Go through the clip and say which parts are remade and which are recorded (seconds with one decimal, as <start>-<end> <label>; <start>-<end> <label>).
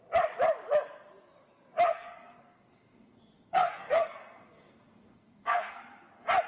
0.0-1.9 recorded; 1.9-5.8 remade; 5.8-6.5 recorded